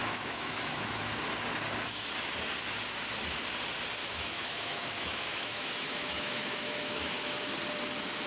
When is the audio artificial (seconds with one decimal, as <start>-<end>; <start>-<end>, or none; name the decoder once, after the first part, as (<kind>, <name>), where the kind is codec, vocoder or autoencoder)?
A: 0.0-1.0 (autoencoder, DAC-VAE); 4.0-7.3